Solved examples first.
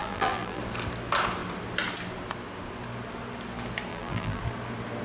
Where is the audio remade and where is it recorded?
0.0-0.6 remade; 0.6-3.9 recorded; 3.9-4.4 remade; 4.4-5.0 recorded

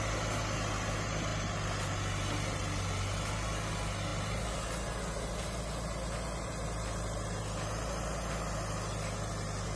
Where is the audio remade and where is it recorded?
0.0-9.8 recorded

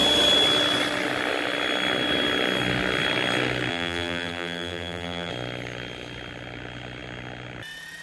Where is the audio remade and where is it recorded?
0.0-3.7 recorded; 3.7-5.3 remade; 5.3-8.0 recorded

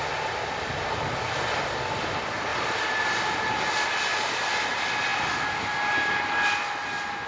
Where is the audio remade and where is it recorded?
0.0-2.5 recorded; 2.5-3.7 remade; 3.7-7.3 recorded

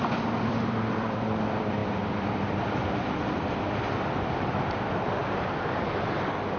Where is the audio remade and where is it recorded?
0.0-5.2 remade; 5.2-6.6 recorded